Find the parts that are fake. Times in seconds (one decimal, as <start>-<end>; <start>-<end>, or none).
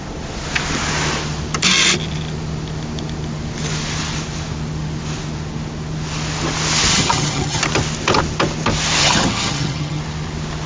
6.9-7.6; 9.0-10.0